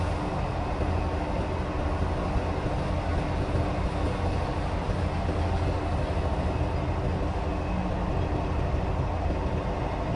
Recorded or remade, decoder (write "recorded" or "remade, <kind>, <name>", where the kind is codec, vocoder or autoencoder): recorded